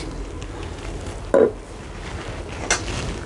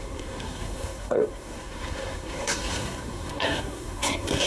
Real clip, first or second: first